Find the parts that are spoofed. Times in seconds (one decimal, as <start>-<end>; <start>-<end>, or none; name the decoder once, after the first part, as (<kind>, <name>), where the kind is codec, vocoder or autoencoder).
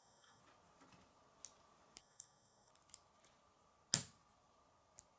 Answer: 0.0-0.4 (codec, DAC); 2.0-2.7